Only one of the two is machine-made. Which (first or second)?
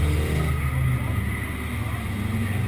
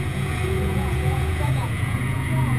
second